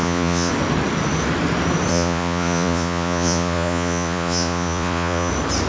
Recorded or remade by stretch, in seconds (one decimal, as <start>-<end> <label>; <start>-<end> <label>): 0.0-0.5 remade; 0.5-1.9 recorded; 1.9-5.3 remade; 5.3-5.7 recorded